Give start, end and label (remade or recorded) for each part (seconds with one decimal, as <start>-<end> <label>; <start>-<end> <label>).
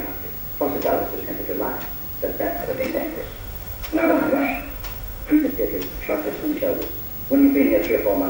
0.0-2.6 recorded; 2.6-5.5 remade; 5.5-5.9 recorded; 5.9-6.6 remade; 6.6-8.3 recorded